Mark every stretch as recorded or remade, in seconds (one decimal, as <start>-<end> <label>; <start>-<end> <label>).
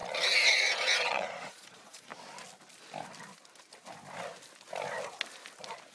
0.0-0.5 recorded; 0.5-2.1 remade; 2.1-5.9 recorded